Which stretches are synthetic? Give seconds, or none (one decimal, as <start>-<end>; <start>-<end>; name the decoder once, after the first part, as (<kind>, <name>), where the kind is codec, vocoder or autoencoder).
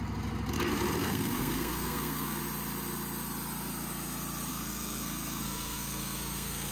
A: 1.0-2.4 (codec, SNAC); 4.5-6.7